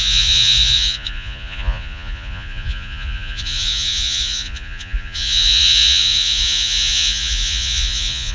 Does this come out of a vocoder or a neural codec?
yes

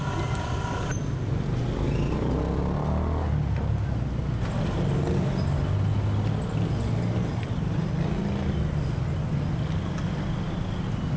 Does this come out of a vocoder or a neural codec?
no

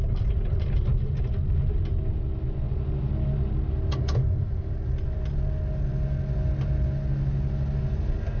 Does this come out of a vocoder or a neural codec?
no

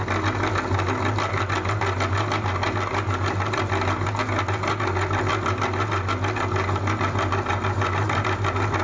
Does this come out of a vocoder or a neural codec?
no